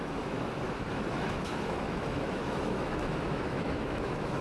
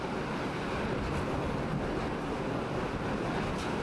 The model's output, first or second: first